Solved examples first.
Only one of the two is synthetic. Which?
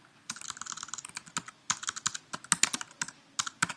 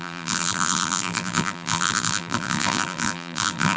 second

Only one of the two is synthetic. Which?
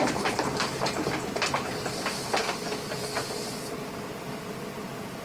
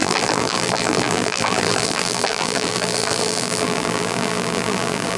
second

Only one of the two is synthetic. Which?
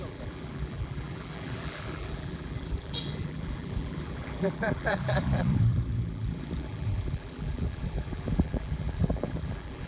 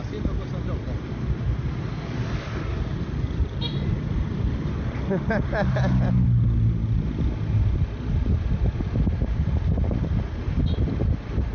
first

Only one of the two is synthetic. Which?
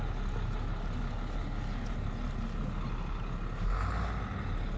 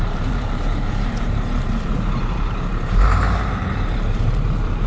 second